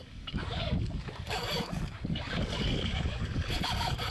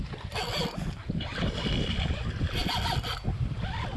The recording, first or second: second